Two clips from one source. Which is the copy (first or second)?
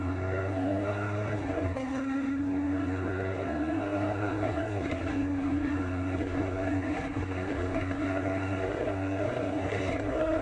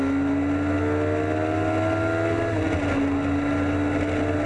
first